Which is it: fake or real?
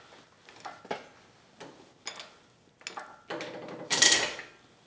real